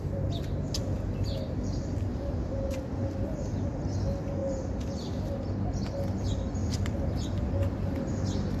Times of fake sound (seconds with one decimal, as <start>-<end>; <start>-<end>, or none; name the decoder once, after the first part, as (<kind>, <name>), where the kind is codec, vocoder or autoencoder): 2.1-2.7 (vocoder, BigVGAN v2); 4.4-5.3; 6.6-7.3